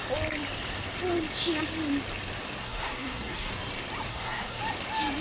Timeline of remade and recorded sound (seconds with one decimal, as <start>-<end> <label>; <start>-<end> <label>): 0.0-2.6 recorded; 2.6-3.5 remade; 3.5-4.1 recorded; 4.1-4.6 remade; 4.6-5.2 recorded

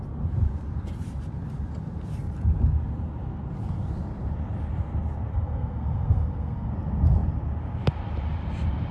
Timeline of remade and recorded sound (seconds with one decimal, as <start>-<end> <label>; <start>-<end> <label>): 0.0-5.3 recorded; 5.3-6.7 remade; 6.7-8.9 recorded

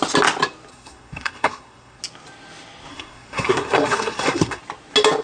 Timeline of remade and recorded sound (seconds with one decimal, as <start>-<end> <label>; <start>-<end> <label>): 0.0-0.7 recorded; 0.7-2.0 remade; 2.0-2.9 recorded; 2.9-4.6 remade; 4.6-5.2 recorded

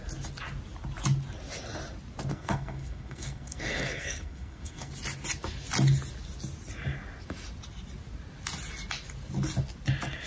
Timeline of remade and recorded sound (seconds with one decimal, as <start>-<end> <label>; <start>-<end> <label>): 0.0-2.3 recorded; 2.3-4.9 remade; 4.9-10.3 recorded

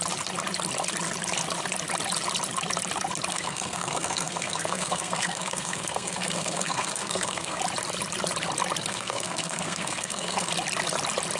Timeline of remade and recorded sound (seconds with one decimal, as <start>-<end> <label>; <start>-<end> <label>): 0.0-3.3 recorded; 3.3-7.6 remade; 7.6-8.9 recorded; 8.9-10.5 remade; 10.5-11.4 recorded

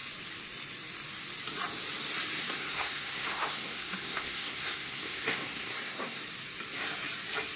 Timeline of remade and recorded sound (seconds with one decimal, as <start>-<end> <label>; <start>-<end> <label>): 0.0-2.4 recorded; 2.4-6.2 remade; 6.2-7.6 recorded

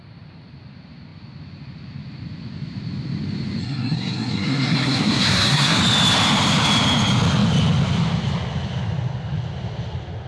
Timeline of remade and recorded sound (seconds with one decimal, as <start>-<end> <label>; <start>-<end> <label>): 0.0-3.6 recorded; 3.6-5.8 remade; 5.8-10.3 recorded

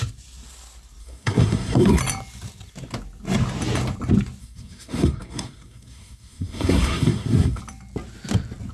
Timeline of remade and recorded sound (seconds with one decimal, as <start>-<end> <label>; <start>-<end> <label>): 0.0-1.0 recorded; 1.0-2.0 remade; 2.0-4.4 recorded; 4.4-7.6 remade; 7.6-8.7 recorded